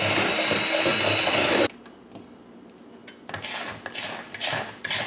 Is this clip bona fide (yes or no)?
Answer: yes